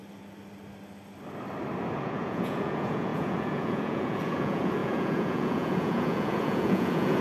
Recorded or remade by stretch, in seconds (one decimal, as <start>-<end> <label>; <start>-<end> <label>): 0.0-2.0 recorded; 2.0-7.2 remade